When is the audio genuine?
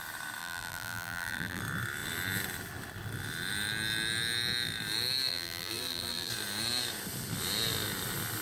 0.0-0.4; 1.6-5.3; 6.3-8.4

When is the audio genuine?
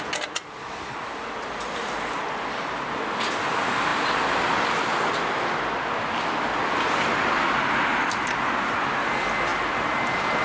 0.0-10.4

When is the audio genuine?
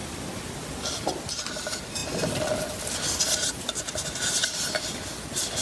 0.0-5.6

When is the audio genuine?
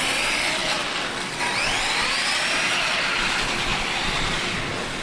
0.0-0.6; 1.1-3.7; 4.5-5.0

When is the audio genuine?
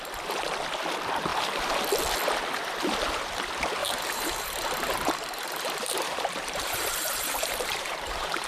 0.0-3.8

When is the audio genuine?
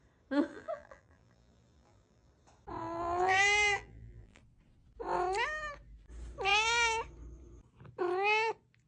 0.0-0.5; 2.3-2.8; 4.4-8.9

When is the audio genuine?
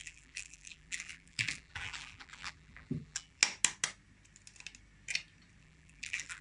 3.4-5.6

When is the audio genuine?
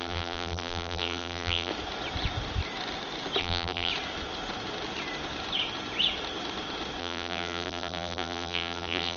1.7-3.4; 3.9-7.0